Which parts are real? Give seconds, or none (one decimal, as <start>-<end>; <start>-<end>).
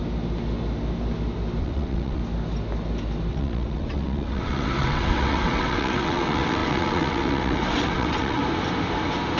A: 0.0-1.6; 2.2-3.3; 8.4-9.4